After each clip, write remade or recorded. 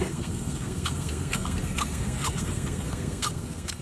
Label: remade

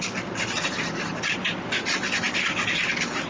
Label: recorded